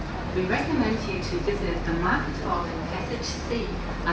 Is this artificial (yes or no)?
no